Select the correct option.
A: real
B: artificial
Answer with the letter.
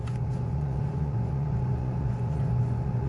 B